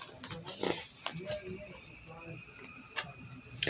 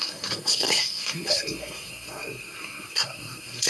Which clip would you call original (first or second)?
first